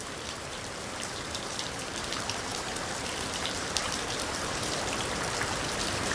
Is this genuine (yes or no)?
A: no